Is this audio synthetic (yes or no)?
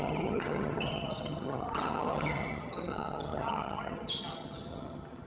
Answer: yes